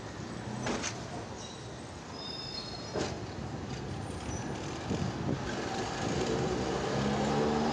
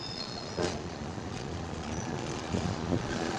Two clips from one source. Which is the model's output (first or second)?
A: second